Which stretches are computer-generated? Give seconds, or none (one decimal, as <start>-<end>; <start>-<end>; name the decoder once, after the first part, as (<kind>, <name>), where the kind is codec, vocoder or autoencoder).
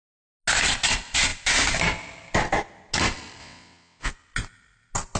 3.4-4.1 (vocoder, WaveNeXt)